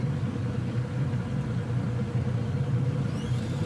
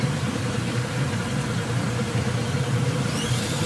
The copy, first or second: second